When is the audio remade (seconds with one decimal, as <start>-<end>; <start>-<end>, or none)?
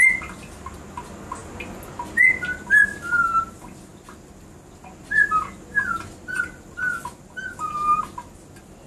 none